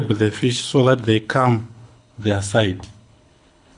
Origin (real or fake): fake